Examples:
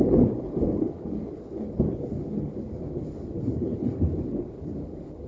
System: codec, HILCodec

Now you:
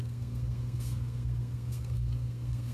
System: codec, SNAC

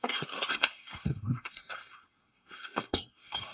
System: codec, SNAC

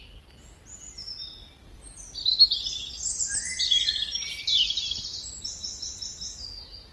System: none